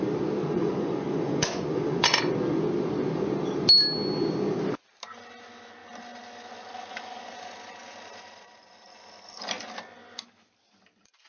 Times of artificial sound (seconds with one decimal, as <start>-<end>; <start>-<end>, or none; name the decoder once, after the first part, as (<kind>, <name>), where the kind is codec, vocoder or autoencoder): 0.4-2.2 (vocoder, Vocos)